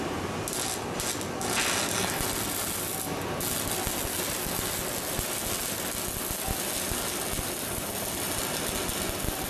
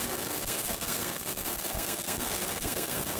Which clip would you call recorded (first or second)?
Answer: first